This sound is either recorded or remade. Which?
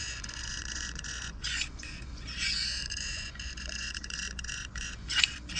remade